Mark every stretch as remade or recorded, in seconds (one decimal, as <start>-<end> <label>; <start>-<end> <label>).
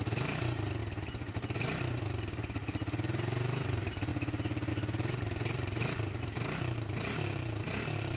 0.0-0.8 remade; 0.8-2.0 recorded; 2.0-8.2 remade